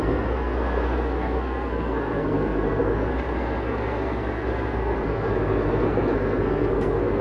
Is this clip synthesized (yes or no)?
yes